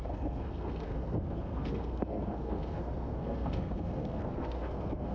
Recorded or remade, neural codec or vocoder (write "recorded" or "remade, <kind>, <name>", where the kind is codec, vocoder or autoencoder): remade, codec, SNAC